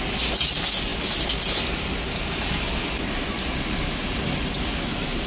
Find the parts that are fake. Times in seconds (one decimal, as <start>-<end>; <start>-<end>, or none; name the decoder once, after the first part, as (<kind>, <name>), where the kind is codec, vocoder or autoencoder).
none